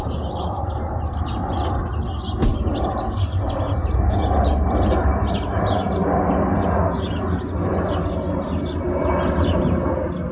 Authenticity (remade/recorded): recorded